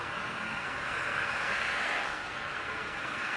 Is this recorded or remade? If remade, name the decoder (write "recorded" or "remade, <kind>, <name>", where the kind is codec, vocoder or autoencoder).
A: remade, codec, SNAC